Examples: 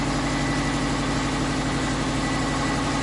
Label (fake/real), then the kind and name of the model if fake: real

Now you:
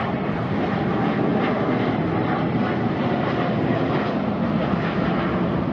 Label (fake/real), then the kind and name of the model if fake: real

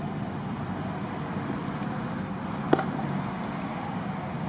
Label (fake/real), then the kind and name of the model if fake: real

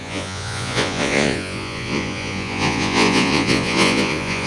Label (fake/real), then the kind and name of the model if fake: fake, vocoder, Vocos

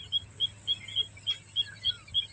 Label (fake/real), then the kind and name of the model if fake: real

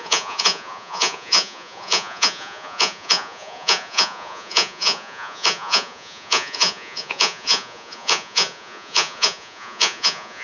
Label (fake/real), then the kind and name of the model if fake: fake, vocoder, Vocos